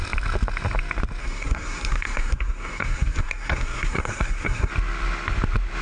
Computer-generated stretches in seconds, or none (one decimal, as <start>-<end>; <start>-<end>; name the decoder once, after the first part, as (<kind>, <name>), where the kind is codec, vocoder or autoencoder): 1.2-4.7 (codec, SNAC)